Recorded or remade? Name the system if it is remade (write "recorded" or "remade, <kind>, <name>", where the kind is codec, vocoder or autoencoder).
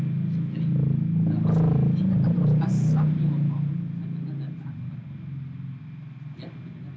recorded